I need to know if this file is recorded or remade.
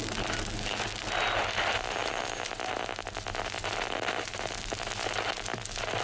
recorded